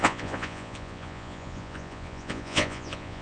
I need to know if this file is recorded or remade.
remade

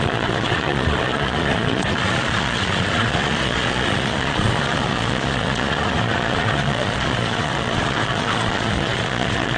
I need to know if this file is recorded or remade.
remade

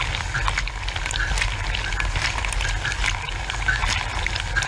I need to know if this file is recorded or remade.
recorded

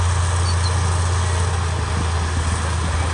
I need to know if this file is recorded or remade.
recorded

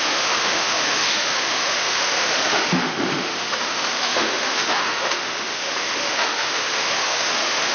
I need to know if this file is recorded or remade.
remade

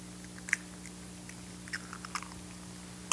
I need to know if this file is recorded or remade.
recorded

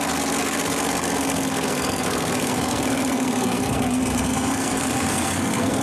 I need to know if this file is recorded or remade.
remade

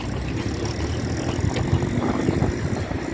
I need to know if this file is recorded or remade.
recorded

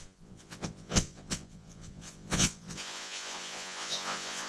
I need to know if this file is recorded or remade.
remade